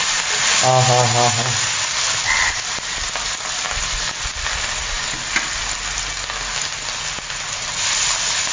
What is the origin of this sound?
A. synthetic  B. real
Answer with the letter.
B